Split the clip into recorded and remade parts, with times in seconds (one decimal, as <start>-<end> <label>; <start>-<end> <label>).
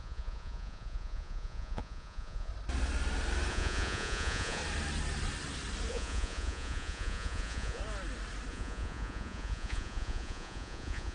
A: 0.0-2.5 remade; 2.5-3.5 recorded; 3.5-4.6 remade; 4.6-5.9 recorded; 5.9-7.8 remade; 7.8-8.5 recorded; 8.5-11.1 remade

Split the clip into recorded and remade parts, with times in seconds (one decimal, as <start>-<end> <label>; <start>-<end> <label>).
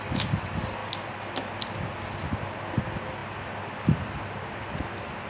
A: 0.0-5.3 recorded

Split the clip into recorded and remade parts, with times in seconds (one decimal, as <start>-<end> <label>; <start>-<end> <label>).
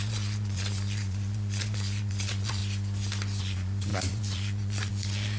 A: 0.0-2.6 remade; 2.6-3.4 recorded; 3.4-5.4 remade